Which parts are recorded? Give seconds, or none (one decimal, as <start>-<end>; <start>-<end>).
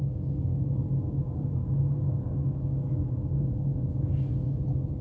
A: 4.1-5.0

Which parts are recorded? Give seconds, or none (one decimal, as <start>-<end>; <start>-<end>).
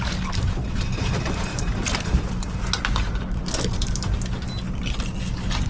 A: 0.0-5.7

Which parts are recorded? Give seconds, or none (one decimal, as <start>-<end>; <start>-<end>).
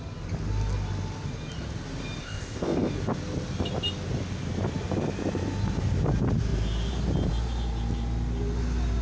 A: 0.0-2.2; 2.9-9.0